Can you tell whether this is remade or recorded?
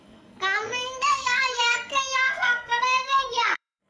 remade